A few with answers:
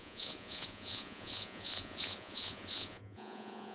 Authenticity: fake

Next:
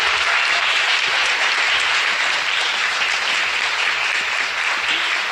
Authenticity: fake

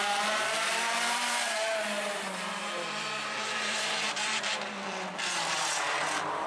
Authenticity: fake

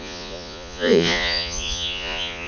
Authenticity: fake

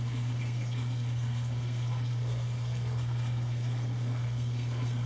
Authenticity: fake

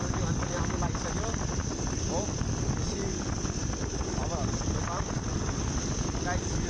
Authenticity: real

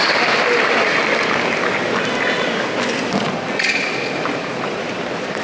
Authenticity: real